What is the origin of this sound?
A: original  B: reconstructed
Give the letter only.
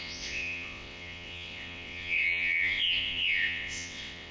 B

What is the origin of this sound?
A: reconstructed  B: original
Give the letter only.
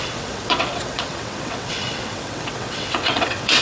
A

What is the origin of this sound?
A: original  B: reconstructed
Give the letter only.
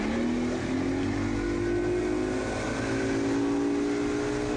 A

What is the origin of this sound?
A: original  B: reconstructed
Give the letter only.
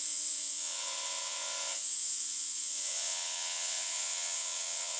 B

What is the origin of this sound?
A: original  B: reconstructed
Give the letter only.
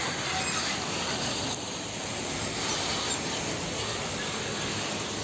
A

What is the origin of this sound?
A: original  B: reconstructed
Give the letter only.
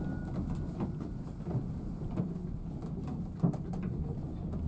A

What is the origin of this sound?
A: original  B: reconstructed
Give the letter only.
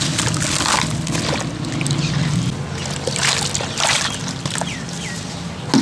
A